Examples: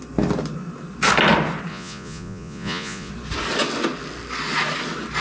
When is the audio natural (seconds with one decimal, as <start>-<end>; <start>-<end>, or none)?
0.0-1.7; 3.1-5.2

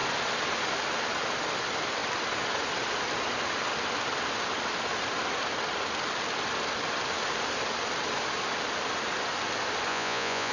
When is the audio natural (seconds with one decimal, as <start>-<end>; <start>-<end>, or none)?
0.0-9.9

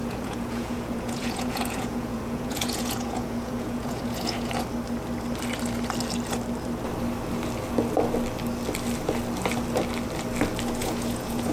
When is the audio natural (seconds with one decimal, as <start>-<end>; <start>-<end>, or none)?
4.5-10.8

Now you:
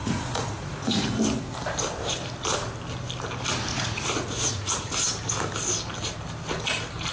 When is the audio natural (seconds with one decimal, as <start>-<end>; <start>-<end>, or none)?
1.2-3.7; 4.9-7.1

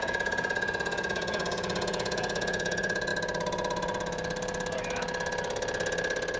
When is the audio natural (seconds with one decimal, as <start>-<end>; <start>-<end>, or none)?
3.1-6.4

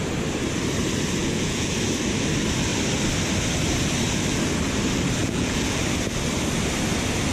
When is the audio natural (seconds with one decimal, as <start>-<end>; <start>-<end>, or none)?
0.0-1.2; 1.7-5.2; 5.8-7.3

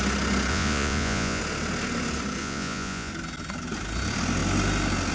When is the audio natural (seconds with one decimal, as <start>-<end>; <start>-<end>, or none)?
0.0-0.5; 1.4-2.4; 3.1-5.1

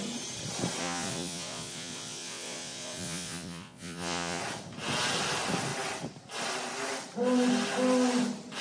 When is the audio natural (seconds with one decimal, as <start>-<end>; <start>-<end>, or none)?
0.0-0.8; 4.4-8.6